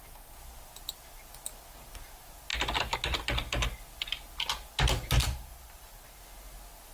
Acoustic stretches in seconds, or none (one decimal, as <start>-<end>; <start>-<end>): 0.0-5.2; 6.2-6.9